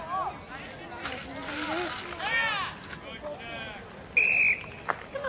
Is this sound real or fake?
real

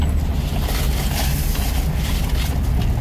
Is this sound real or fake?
real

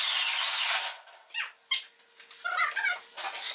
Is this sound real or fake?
real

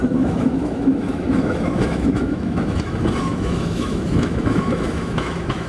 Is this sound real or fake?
fake